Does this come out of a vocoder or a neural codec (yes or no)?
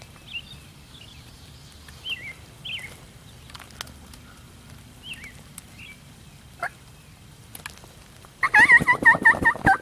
no